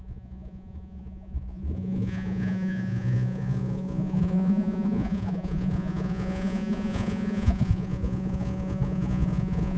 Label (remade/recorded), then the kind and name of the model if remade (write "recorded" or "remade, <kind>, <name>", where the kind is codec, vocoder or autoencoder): remade, vocoder, Vocos